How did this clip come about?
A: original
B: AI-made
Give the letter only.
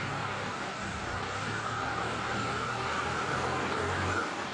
B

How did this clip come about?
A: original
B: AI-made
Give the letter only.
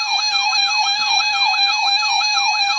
B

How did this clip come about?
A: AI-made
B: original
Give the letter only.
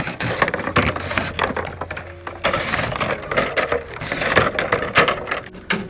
B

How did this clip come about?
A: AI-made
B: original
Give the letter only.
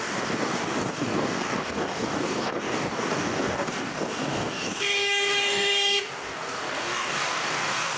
A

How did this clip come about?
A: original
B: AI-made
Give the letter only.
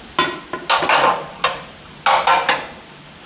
A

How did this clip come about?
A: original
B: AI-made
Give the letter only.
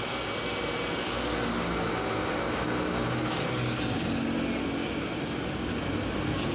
A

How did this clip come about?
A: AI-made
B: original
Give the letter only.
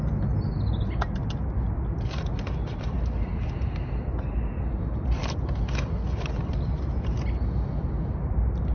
B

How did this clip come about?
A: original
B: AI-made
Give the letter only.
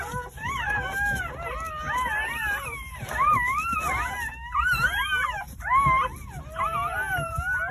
A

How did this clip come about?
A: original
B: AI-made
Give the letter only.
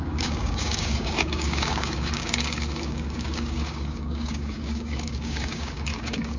B